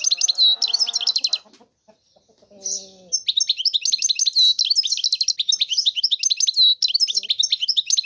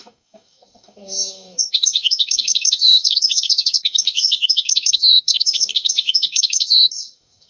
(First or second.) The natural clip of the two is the first